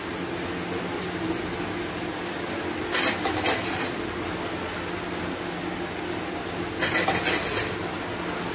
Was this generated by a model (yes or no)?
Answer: no